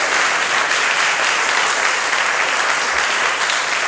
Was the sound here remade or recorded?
recorded